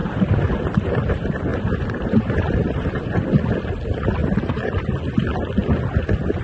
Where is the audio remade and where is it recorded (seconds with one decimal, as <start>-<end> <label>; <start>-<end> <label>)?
0.0-1.1 remade; 1.1-1.5 recorded; 1.5-3.2 remade; 3.2-4.2 recorded; 4.2-4.8 remade; 4.8-6.4 recorded